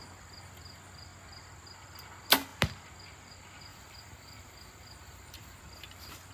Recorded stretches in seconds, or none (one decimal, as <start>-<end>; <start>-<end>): 0.0-3.7; 5.6-6.3